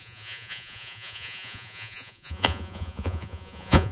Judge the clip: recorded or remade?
remade